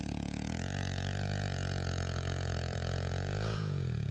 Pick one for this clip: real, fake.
fake